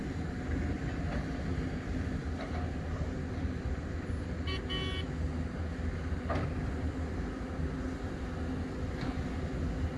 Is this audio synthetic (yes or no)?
no